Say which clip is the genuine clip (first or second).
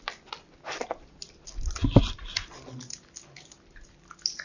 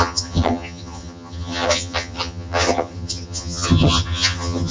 first